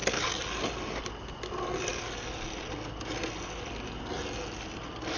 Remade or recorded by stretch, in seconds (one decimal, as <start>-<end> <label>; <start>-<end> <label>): 0.0-5.2 recorded